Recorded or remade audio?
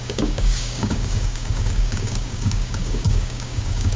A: remade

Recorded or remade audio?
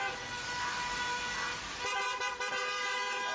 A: recorded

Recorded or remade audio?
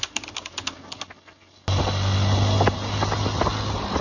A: recorded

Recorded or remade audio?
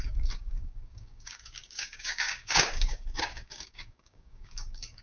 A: remade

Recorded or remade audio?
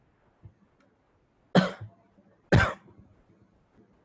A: recorded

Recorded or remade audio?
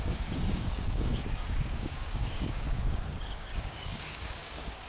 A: remade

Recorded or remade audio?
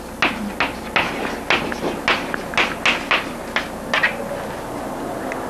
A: recorded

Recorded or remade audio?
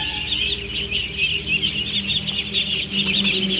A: recorded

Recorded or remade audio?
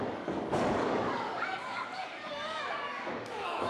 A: remade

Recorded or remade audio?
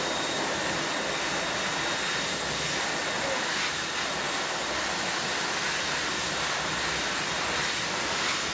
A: recorded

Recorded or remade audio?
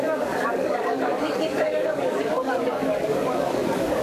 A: remade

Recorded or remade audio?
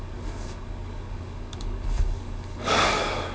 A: remade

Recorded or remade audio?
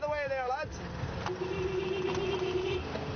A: recorded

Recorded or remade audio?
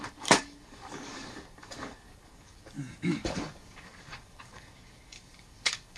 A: remade